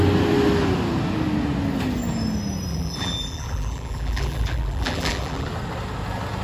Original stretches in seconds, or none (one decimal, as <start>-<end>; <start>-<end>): 0.0-2.7; 5.5-6.4